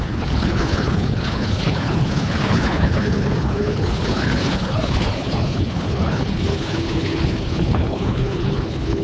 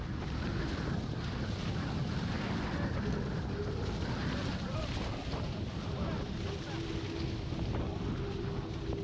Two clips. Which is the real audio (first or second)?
second